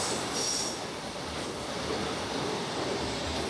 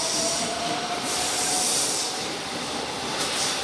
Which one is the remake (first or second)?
first